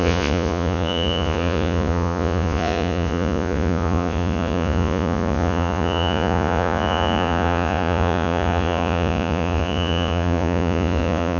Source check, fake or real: fake